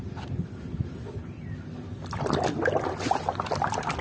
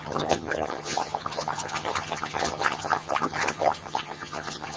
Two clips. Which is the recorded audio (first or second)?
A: first